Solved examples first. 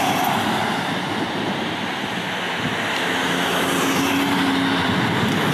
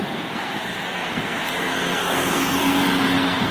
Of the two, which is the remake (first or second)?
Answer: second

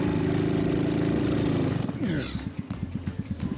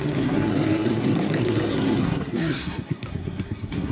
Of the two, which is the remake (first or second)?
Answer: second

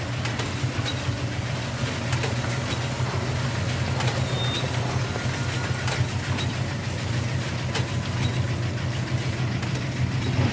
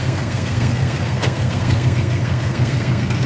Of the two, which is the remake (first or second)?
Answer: second